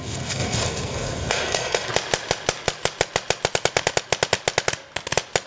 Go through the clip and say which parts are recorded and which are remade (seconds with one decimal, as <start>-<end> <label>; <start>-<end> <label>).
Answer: 0.0-1.9 remade; 1.9-5.5 recorded